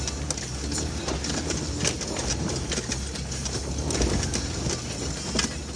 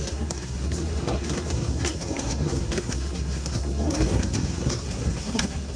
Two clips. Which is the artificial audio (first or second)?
second